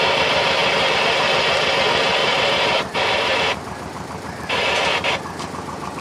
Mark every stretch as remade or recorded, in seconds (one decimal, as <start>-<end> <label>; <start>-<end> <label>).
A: 0.0-2.2 recorded; 2.2-6.0 remade